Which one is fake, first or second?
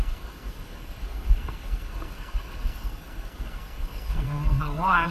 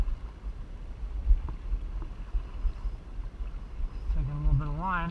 first